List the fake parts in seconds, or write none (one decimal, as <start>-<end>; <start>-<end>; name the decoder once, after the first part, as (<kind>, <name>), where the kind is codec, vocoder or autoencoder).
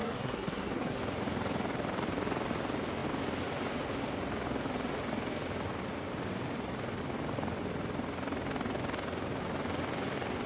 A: 0.0-1.0 (codec, SNAC)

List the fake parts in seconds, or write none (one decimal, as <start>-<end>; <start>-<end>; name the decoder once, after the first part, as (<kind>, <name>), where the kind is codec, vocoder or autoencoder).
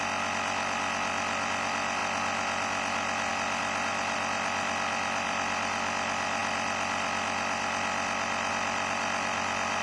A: none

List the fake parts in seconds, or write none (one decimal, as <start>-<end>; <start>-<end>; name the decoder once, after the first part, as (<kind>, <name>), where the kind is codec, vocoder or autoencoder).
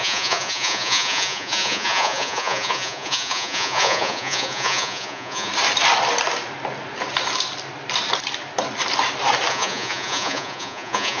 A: 0.0-5.5 (vocoder, Vocos); 9.5-11.2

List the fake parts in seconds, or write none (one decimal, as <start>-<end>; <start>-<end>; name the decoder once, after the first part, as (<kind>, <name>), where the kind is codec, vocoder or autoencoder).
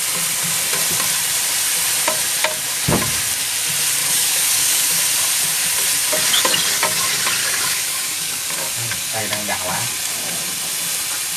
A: 4.0-5.0 (codec, DAC); 7.4-9.2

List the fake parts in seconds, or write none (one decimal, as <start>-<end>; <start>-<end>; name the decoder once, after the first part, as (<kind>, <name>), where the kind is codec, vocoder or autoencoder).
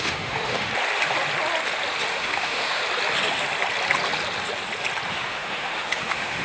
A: 0.0-0.7 (autoencoder, DAC-VAE); 2.1-2.8; 5.1-6.4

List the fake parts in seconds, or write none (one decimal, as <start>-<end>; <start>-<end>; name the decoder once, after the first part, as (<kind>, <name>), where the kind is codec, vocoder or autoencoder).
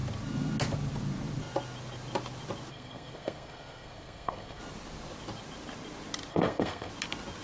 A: 2.7-4.6 (codec, SNAC); 6.3-6.9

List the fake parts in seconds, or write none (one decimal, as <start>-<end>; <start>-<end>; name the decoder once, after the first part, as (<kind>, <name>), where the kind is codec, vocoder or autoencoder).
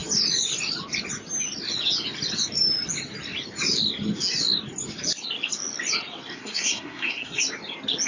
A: 6.3-7.4 (codec, SNAC)